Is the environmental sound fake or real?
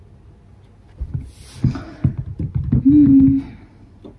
real